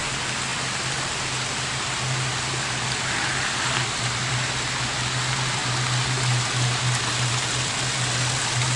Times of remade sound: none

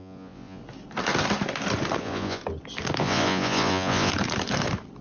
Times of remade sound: 0.0-0.6; 2.0-2.4; 3.0-4.1

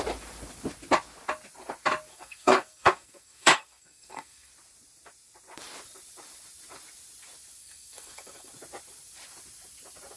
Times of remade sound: 2.1-4.5; 7.6-8.5